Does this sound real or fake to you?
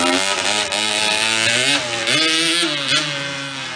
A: real